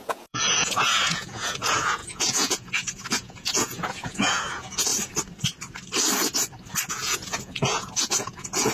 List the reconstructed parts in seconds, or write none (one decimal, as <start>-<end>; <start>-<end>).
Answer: 0.0-4.9; 6.9-8.7